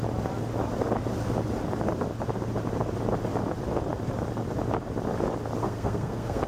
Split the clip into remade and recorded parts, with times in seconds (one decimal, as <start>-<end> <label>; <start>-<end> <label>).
0.0-5.6 recorded; 5.6-6.5 remade